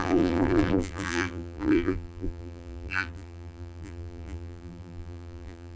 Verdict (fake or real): fake